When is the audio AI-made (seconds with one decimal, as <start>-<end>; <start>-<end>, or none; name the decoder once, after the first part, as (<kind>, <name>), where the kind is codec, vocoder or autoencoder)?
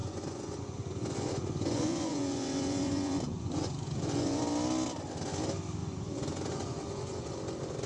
0.0-4.4 (vocoder, Vocos); 5.8-7.3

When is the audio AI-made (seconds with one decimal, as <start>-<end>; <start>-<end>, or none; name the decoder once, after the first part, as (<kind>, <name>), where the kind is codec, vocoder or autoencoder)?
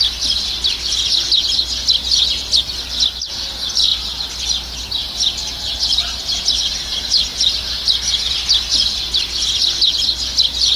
none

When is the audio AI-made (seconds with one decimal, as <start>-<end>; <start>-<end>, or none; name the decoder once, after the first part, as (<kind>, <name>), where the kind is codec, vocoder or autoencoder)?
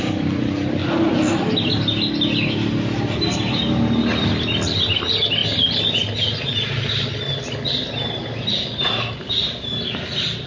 none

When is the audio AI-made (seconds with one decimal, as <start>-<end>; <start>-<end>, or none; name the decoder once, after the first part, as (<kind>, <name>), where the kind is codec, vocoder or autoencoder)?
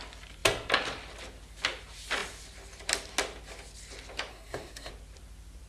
4.3-4.9 (codec, SNAC)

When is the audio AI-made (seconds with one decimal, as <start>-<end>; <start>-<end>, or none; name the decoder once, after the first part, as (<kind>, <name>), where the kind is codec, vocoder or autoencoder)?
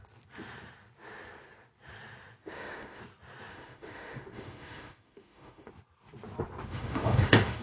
2.4-3.0 (autoencoder, DAC-VAE); 3.5-5.7; 6.7-7.6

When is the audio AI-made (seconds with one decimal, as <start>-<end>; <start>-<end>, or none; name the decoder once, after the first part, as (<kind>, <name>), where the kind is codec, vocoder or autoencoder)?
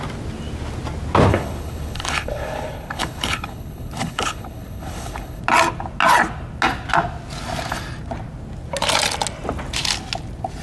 1.3-5.4 (codec, HILCodec)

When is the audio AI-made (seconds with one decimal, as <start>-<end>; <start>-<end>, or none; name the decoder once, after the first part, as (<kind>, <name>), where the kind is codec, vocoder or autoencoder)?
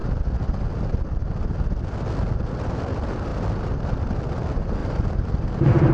4.8-5.9 (vocoder, BigVGAN v2)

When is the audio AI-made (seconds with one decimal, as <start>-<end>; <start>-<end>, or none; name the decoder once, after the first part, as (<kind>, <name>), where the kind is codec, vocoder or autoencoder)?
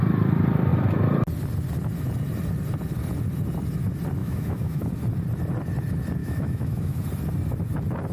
4.2-4.9 (autoencoder, DAC-VAE); 6.2-7.0